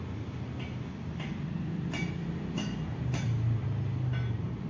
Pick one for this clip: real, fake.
real